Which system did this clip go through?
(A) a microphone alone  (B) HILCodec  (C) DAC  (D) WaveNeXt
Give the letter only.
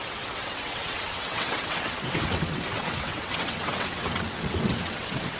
D